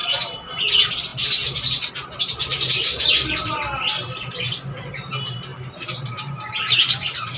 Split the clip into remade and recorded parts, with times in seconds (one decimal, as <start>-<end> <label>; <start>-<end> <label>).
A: 0.0-1.1 recorded; 1.1-1.9 remade; 1.9-2.5 recorded; 2.5-3.6 remade; 3.6-5.5 recorded; 5.5-7.4 remade